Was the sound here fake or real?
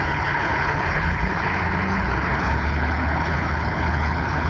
fake